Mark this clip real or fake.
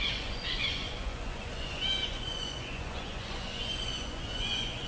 fake